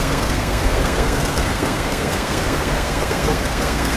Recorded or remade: remade